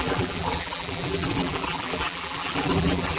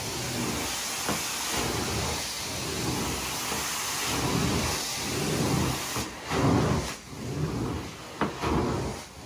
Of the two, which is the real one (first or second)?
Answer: second